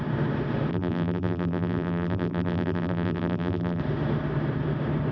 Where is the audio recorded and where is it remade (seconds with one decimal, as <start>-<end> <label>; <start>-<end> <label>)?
0.0-0.7 recorded; 0.7-3.8 remade; 3.8-5.1 recorded